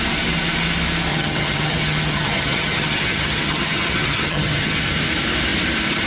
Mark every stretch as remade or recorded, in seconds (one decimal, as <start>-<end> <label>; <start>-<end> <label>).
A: 0.0-1.1 recorded; 1.1-4.8 remade; 4.8-6.1 recorded